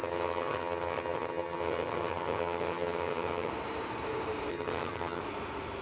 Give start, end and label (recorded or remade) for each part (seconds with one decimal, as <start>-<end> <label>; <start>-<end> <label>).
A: 0.0-3.5 remade; 3.5-4.5 recorded; 4.5-5.2 remade; 5.2-5.8 recorded